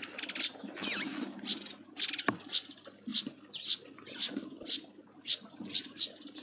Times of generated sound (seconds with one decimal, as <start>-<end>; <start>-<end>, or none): none